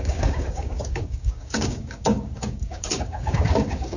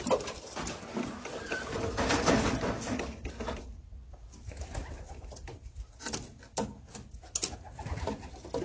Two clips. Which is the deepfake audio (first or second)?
first